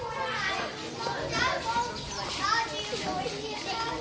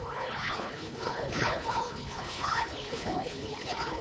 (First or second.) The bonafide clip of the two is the first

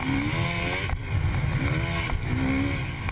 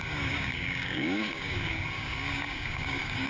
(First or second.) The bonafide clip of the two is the first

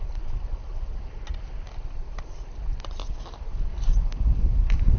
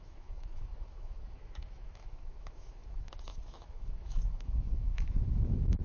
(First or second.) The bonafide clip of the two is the first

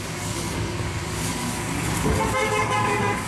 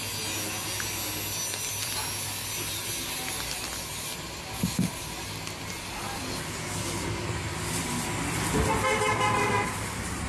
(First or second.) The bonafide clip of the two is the second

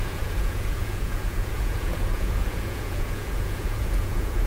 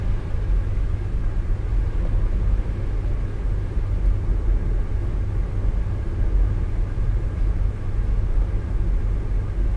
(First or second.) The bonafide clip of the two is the second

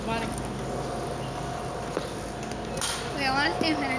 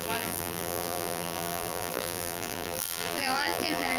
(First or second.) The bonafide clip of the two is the first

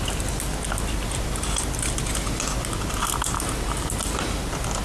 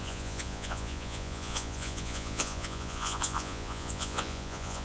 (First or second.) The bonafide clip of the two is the first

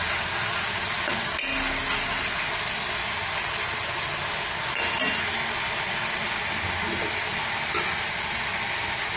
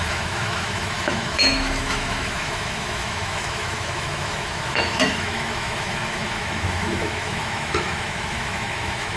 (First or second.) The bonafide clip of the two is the first